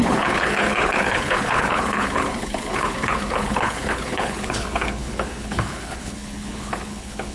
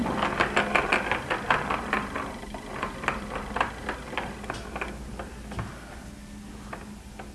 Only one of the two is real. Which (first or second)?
second